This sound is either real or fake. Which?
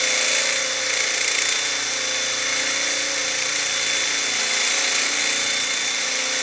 real